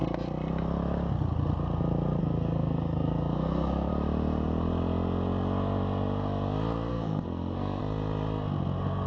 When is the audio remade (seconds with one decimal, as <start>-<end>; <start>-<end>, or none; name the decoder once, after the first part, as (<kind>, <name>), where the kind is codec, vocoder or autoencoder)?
2.2-3.9 (codec, SNAC); 6.9-7.8